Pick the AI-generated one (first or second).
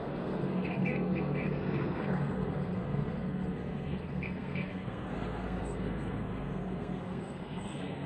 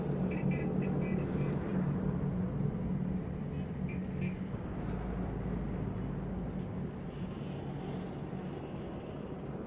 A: first